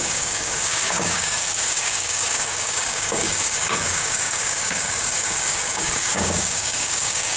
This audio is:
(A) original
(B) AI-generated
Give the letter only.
B